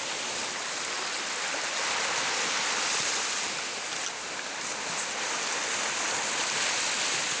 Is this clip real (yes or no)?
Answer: yes